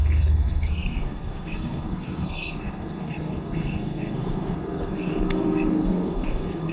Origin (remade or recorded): remade